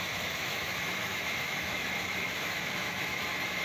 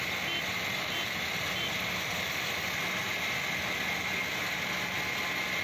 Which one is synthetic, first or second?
first